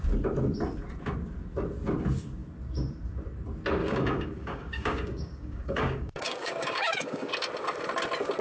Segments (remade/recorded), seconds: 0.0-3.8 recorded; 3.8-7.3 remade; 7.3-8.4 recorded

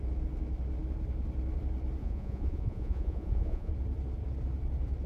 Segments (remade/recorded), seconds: 0.0-2.0 recorded; 2.0-3.7 remade; 3.7-5.1 recorded

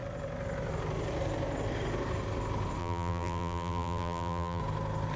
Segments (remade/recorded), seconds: 0.0-2.8 recorded; 2.8-4.6 remade; 4.6-5.2 recorded

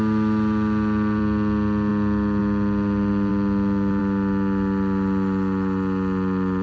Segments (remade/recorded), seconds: 0.0-6.6 recorded

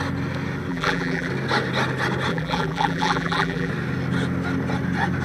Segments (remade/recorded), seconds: 0.0-0.7 recorded; 0.7-1.3 remade; 1.3-2.3 recorded; 2.3-3.7 remade; 3.7-5.2 recorded

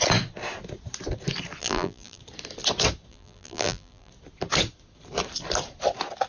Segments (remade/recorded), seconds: 0.0-1.6 recorded; 1.6-2.2 remade; 2.2-3.1 recorded; 3.1-4.1 remade; 4.1-6.3 recorded

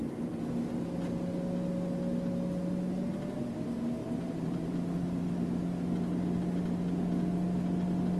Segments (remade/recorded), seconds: 0.0-4.0 recorded; 4.0-4.7 remade; 4.7-8.2 recorded

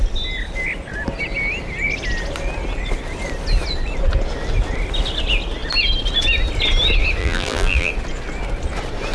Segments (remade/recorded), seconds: 0.0-7.2 recorded; 7.2-7.9 remade; 7.9-9.1 recorded